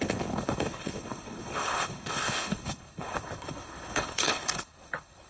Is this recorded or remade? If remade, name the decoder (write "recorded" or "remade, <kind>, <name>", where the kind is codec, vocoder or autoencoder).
remade, codec, HILCodec